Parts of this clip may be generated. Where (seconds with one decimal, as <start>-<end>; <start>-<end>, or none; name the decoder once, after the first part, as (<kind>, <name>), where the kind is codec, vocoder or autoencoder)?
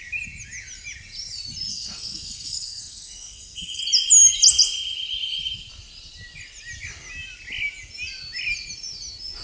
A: 1.7-3.8 (codec, SNAC)